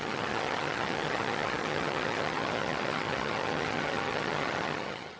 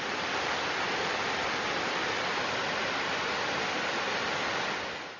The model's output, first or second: first